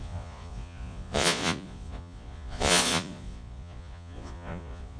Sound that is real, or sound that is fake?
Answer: fake